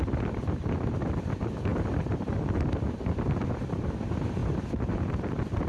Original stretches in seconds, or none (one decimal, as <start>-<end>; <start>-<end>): 0.0-5.7